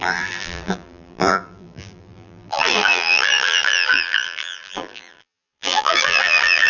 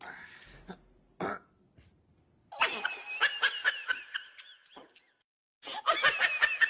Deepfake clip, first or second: first